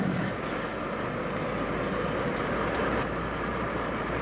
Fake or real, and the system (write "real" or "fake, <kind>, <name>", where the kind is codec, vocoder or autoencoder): fake, vocoder, BigVGAN v2